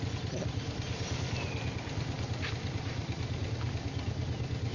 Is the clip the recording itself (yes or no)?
yes